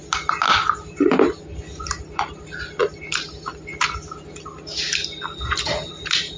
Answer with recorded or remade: recorded